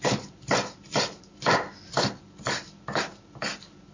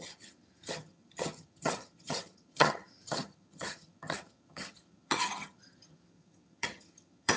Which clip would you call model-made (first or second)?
second